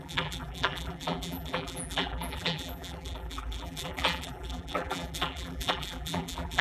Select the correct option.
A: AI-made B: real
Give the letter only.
A